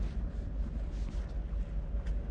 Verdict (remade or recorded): recorded